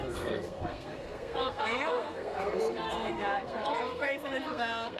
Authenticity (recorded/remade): remade